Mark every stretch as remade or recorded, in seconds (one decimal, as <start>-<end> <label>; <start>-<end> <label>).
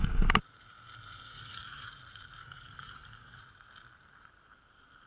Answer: 0.0-1.3 recorded; 1.3-1.9 remade; 1.9-2.4 recorded; 2.4-3.4 remade; 3.4-5.1 recorded